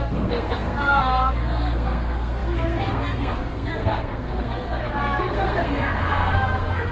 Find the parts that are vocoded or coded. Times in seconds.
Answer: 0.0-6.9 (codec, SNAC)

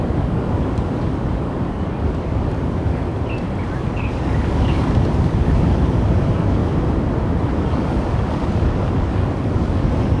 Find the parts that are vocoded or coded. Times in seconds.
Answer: 0.0-3.1 (codec, DAC); 3.8-6.6; 7.6-10.2

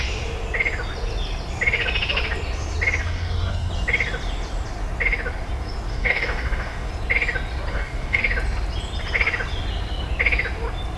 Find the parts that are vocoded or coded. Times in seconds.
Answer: 3.0-3.7 (codec, DAC); 5.9-6.9; 7.7-8.2

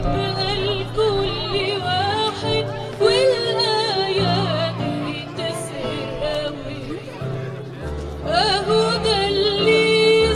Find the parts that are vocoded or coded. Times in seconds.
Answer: none

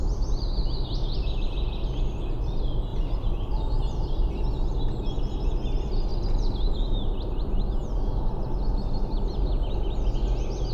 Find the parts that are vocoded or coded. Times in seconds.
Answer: 2.9-4.4 (vocoder, BigVGAN v2)

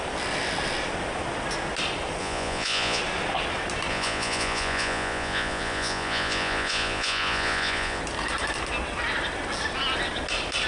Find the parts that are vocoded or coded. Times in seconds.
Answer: 2.2-3.0 (vocoder, Vocos); 3.9-8.0

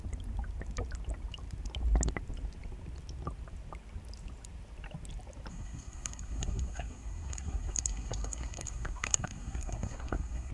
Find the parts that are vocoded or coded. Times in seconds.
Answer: 5.5-10.5 (codec, SNAC)